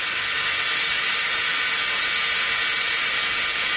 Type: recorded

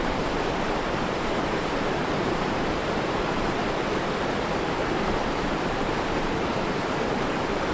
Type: remade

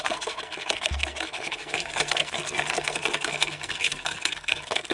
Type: remade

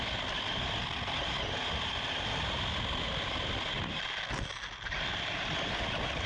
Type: recorded